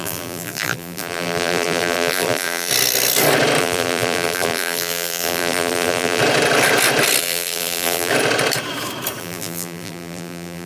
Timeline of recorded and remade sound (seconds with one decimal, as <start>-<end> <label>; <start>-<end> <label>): 0.0-2.7 remade; 2.7-3.6 recorded; 3.6-6.2 remade; 6.2-7.2 recorded; 7.2-8.1 remade; 8.1-9.2 recorded; 9.2-10.7 remade

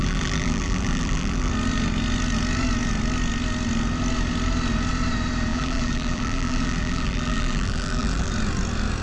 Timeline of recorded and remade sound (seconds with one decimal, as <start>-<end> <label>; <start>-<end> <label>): 0.0-1.5 remade; 1.5-5.5 recorded; 5.5-8.3 remade; 8.3-9.0 recorded

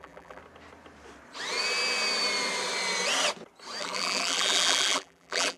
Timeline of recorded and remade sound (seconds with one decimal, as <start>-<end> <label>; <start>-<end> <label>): 0.0-0.4 remade; 0.4-3.8 recorded; 3.8-5.6 remade

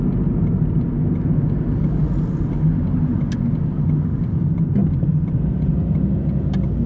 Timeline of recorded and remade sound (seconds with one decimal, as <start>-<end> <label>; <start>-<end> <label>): 0.0-4.8 recorded; 4.8-5.7 remade; 5.7-6.9 recorded